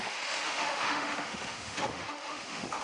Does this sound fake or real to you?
fake